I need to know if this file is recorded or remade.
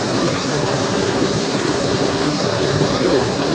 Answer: remade